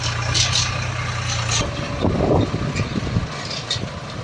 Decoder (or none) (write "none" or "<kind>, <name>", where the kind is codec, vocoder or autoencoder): none